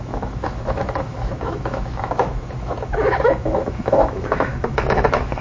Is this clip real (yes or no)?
no